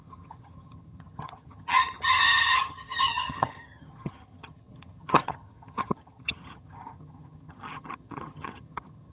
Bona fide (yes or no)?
no